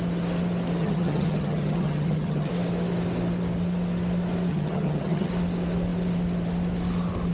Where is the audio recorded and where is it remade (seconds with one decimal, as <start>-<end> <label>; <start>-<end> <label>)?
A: 0.0-0.8 recorded; 0.8-2.5 remade; 2.5-4.5 recorded; 4.5-5.3 remade; 5.3-7.3 recorded